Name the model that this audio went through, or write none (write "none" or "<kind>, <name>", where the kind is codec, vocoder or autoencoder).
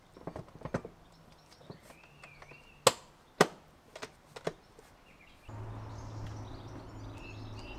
none